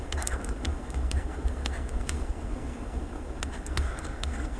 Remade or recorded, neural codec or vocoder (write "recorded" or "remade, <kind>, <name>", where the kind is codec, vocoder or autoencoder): remade, codec, SNAC